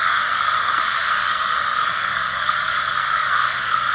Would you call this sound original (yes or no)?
no